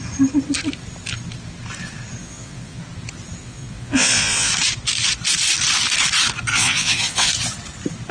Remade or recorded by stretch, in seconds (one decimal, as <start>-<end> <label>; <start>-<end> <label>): 0.0-2.2 recorded; 2.2-2.8 remade; 2.8-3.4 recorded; 3.4-4.5 remade; 4.5-6.5 recorded; 6.5-7.3 remade; 7.3-8.1 recorded